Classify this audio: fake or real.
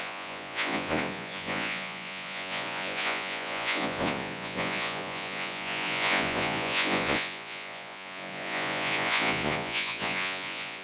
fake